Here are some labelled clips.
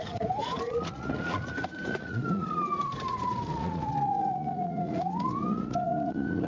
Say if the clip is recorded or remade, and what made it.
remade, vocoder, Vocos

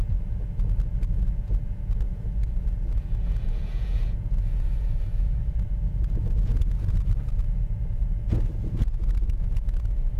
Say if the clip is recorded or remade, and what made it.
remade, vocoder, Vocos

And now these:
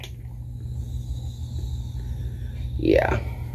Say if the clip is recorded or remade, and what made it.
recorded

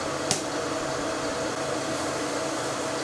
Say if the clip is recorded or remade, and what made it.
recorded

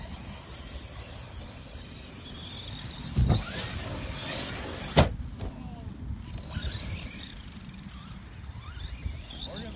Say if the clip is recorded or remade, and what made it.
recorded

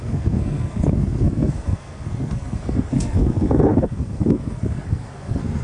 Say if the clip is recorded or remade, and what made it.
remade, codec, SNAC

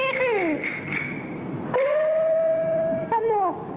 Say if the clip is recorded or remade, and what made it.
recorded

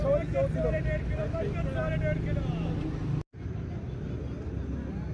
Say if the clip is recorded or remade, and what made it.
recorded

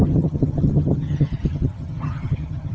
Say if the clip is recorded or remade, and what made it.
remade, vocoder, HiFi-GAN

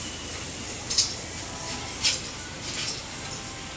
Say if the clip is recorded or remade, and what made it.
recorded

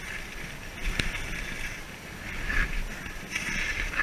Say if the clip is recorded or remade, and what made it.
recorded